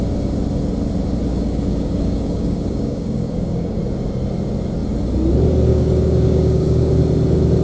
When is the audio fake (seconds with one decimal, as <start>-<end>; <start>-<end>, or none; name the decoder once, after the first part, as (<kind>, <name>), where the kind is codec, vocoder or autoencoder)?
1.3-3.8 (codec, DAC); 5.7-7.0